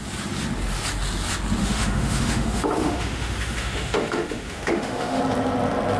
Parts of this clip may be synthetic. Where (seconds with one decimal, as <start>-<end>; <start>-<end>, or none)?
1.6-5.2